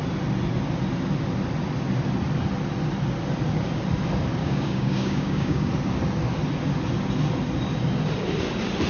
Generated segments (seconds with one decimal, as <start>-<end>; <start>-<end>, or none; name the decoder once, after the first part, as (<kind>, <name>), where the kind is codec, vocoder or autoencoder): 4.4-5.7 (codec, DAC)